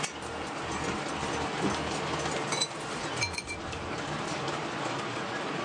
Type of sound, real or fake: real